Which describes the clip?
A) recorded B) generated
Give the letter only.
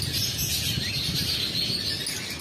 A